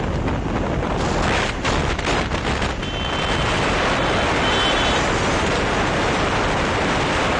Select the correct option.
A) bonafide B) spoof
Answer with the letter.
A